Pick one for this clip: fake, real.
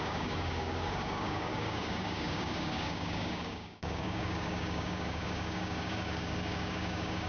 fake